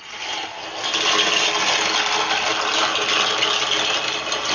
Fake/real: real